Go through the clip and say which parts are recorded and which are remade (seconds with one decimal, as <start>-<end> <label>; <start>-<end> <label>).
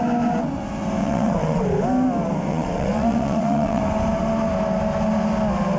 0.0-1.0 recorded; 1.0-1.6 remade; 1.6-2.5 recorded; 2.5-3.8 remade; 3.8-5.8 recorded